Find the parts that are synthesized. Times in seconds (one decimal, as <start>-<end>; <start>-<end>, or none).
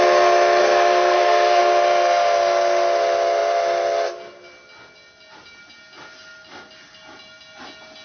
0.6-1.6